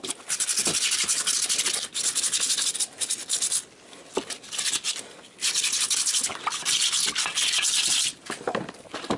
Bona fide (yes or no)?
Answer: yes